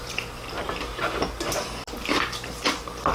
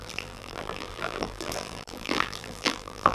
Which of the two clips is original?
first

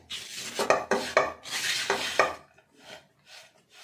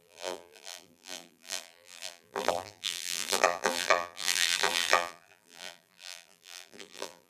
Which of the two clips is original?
first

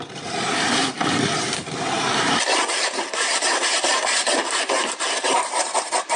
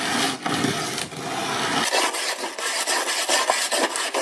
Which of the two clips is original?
second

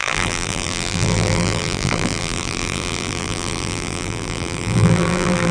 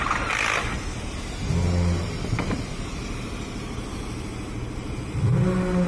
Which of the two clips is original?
second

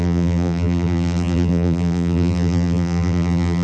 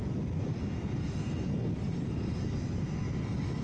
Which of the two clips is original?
second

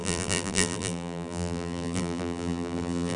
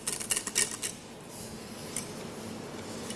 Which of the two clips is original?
second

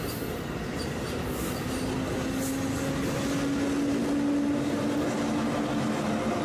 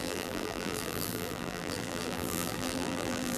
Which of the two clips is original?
first